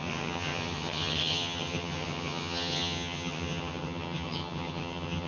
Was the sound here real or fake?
fake